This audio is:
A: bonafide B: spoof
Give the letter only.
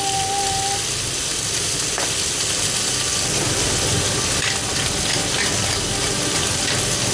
A